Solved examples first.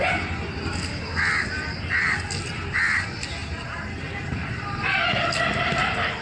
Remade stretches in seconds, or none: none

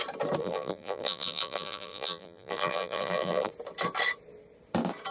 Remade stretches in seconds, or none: 0.4-3.5

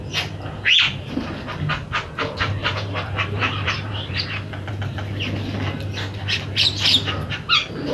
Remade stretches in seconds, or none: 2.6-4.7